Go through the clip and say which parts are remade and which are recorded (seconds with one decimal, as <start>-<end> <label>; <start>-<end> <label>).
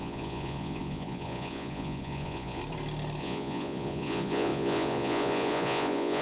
0.0-2.6 remade; 2.6-3.2 recorded; 3.2-6.2 remade